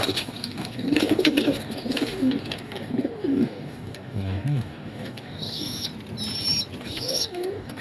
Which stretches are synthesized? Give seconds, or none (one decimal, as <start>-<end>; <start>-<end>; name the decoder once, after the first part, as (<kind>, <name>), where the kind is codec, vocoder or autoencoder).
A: 0.0-5.9 (codec, DAC); 6.8-7.8

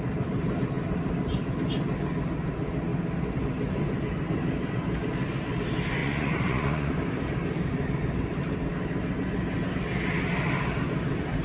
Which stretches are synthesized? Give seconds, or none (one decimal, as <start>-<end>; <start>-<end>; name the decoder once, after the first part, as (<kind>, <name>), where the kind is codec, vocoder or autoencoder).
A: 6.0-6.9 (vocoder, Vocos)

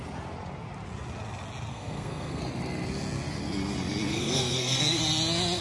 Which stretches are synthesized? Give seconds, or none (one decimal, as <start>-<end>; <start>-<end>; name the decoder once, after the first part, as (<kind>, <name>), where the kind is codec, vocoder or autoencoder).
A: 1.7-2.4 (codec, SNAC); 4.1-5.0

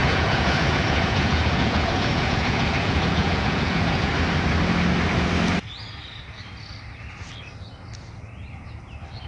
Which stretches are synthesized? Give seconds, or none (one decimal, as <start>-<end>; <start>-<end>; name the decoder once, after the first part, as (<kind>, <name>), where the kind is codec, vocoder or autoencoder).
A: 0.0-4.1 (vocoder, Vocos)